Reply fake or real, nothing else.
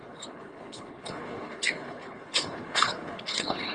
fake